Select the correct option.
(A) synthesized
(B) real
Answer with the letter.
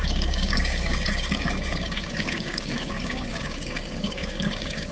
A